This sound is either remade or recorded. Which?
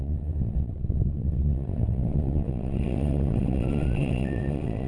remade